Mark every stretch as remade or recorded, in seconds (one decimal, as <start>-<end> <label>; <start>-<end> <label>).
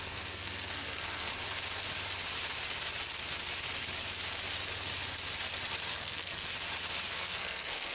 0.0-1.3 remade; 1.3-5.9 recorded; 5.9-6.5 remade; 6.5-7.1 recorded; 7.1-7.9 remade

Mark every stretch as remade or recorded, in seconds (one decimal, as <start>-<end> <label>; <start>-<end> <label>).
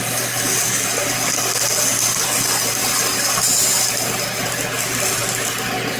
0.0-6.0 recorded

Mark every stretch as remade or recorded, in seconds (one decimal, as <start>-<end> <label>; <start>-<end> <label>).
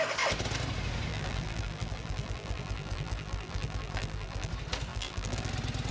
0.0-1.1 recorded; 1.1-4.5 remade; 4.5-4.9 recorded; 4.9-5.5 remade; 5.5-5.9 recorded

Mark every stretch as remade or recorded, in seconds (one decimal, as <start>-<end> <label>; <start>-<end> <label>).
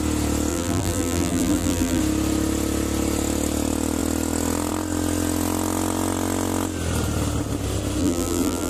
0.0-0.5 recorded; 0.5-2.0 remade; 2.0-8.0 recorded; 8.0-8.7 remade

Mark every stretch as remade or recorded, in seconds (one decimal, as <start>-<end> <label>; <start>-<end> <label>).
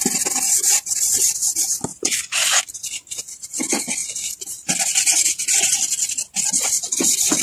0.0-1.9 recorded; 1.9-2.6 remade; 2.6-4.0 recorded; 4.0-5.3 remade; 5.3-7.4 recorded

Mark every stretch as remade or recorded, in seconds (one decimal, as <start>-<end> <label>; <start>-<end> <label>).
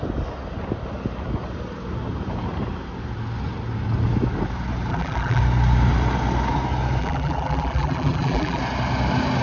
0.0-4.9 recorded; 4.9-5.4 remade; 5.4-7.0 recorded; 7.0-8.6 remade; 8.6-9.4 recorded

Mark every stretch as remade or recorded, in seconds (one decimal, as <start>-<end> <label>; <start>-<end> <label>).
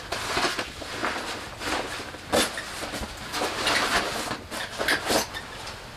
0.0-6.0 recorded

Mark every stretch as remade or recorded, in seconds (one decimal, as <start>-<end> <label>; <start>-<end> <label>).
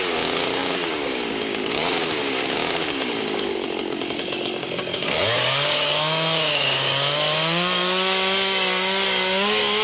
0.0-9.8 remade